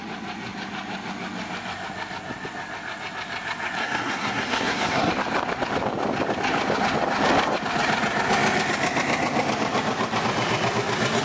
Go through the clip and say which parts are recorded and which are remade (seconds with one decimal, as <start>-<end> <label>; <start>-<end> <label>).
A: 0.0-3.8 recorded; 3.8-5.1 remade; 5.1-11.2 recorded